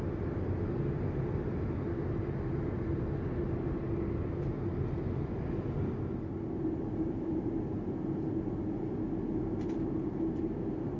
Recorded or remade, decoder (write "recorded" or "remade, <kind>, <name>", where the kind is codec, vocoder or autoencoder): recorded